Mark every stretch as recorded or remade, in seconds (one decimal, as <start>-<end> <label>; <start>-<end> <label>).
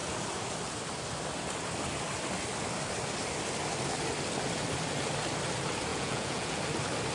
0.0-5.9 recorded; 5.9-6.6 remade; 6.6-7.1 recorded